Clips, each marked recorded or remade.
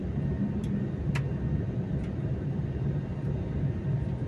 recorded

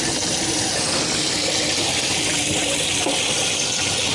recorded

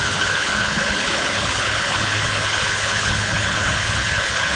remade